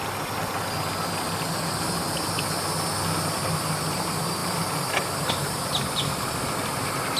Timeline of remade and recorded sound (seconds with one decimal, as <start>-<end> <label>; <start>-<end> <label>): 0.0-7.2 recorded